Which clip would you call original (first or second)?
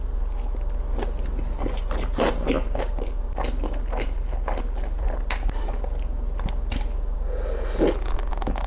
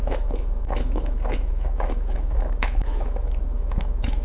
first